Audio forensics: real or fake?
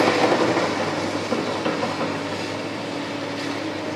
real